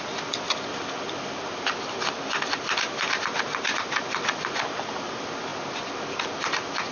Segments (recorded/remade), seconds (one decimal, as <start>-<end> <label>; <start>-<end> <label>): 0.0-6.9 recorded